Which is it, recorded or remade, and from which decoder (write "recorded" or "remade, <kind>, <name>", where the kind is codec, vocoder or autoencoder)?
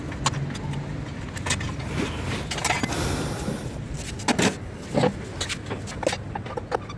recorded